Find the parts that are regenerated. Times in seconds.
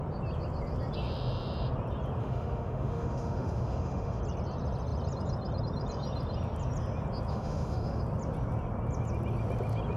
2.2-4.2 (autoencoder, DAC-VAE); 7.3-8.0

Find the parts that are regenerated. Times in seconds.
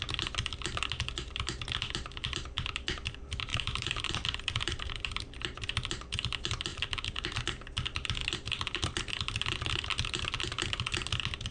3.5-5.1 (vocoder, BigVGAN v2); 6.7-7.4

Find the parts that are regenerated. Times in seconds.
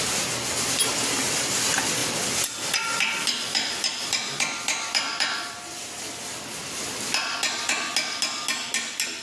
2.0-6.2 (vocoder, BigVGAN v2)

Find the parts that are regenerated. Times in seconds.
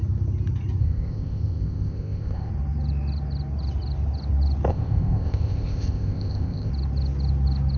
0.8-2.5 (codec, ZipCodec); 4.7-6.7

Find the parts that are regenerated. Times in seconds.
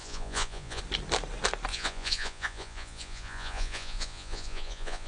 0.0-0.8 (vocoder, Vocos); 1.7-5.1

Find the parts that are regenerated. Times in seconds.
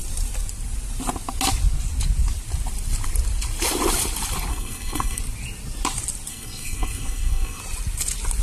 4.5-5.2 (codec, SNAC); 6.3-7.6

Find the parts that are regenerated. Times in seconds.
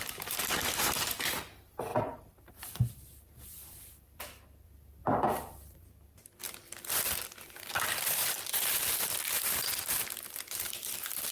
0.0-11.3 (vocoder, BigVGAN v2)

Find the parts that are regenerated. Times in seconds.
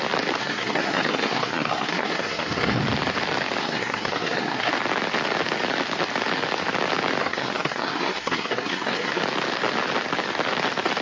0.4-2.8 (codec, SNAC); 3.6-4.7; 7.2-9.2